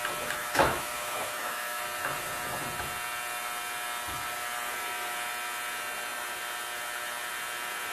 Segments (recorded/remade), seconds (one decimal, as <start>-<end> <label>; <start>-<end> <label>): 0.0-0.4 recorded; 0.4-1.8 remade; 1.8-7.9 recorded